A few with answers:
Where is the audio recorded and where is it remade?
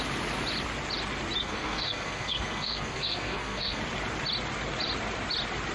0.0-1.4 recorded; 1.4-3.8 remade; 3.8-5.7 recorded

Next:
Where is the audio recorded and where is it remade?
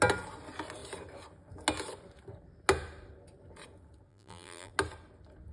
0.0-4.1 recorded; 4.1-4.7 remade; 4.7-5.5 recorded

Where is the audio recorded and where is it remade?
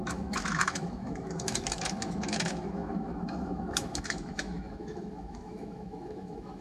0.0-6.6 remade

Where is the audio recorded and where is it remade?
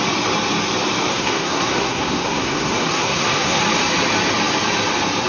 0.0-1.1 recorded; 1.1-3.6 remade; 3.6-5.3 recorded